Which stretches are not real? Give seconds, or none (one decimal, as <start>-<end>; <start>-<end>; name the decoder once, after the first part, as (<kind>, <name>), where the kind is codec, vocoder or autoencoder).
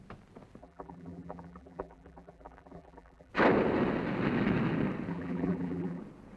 0.6-3.3 (vocoder, BigVGAN v2); 5.1-6.0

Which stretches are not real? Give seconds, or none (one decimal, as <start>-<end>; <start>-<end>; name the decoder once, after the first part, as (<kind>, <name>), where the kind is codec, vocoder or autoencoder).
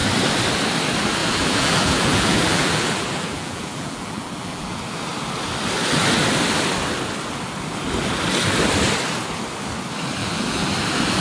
1.2-4.8 (vocoder, BigVGAN v2); 10.2-10.7